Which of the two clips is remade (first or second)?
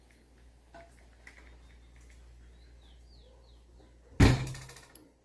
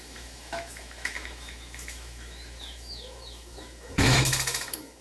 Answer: second